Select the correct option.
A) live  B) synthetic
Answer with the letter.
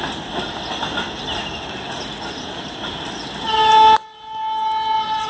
A